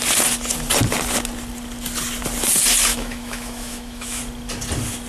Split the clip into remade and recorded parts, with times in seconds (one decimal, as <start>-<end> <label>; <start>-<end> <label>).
0.0-2.9 recorded; 2.9-4.2 remade; 4.2-5.1 recorded